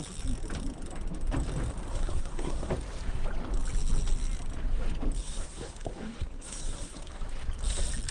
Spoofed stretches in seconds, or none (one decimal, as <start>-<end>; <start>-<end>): 1.9-2.7; 5.2-7.2